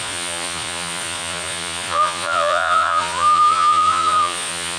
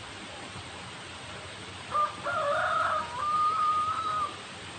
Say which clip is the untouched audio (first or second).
second